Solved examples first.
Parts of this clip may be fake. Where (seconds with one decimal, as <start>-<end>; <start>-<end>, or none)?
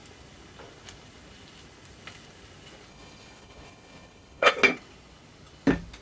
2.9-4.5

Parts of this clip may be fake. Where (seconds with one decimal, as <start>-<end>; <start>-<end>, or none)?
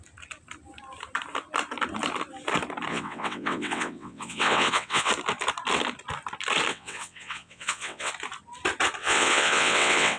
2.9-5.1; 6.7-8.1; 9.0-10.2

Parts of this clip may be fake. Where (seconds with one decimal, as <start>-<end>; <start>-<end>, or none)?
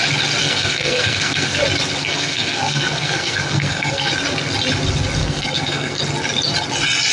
0.4-1.6; 2.0-4.1; 5.2-6.0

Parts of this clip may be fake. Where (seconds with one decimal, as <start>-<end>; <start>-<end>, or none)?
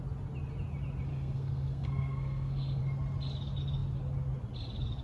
1.1-2.8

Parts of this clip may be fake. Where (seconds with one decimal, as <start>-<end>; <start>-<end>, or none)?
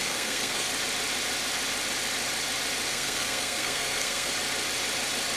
0.0-0.7; 2.9-4.3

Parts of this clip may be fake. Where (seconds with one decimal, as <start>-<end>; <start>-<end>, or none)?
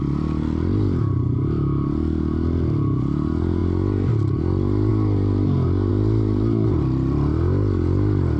none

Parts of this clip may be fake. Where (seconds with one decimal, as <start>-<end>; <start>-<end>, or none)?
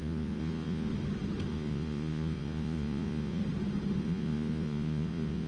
0.0-0.9; 1.5-3.4; 4.0-5.5